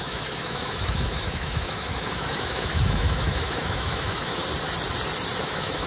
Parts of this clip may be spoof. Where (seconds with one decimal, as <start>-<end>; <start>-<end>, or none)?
0.0-4.4; 5.4-5.9

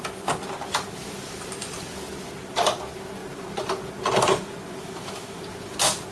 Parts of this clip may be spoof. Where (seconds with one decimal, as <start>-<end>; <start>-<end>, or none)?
4.8-5.4

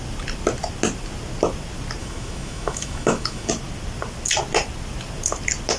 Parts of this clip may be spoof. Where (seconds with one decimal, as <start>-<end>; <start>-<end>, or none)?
2.0-3.5

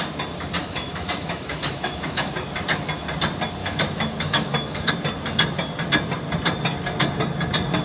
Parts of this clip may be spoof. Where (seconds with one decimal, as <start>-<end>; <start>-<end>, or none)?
0.6-2.3; 3.6-4.9

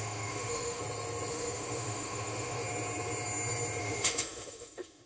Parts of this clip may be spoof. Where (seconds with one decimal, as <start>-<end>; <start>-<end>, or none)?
0.0-0.8; 1.3-2.6; 3.8-5.1

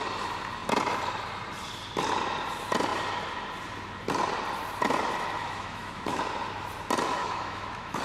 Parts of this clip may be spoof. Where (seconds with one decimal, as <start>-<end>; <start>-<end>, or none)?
5.4-6.2; 7.2-8.0

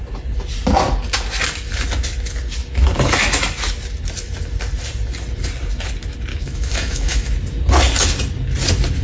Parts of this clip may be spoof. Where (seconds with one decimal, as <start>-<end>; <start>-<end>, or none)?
6.3-7.3